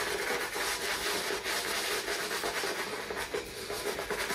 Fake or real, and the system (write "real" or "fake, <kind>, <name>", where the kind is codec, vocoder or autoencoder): real